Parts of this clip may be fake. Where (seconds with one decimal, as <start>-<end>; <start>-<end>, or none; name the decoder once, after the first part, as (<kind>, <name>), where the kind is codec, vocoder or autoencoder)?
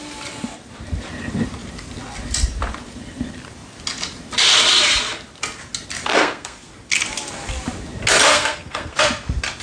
6.1-6.7 (codec, SNAC); 8.3-9.0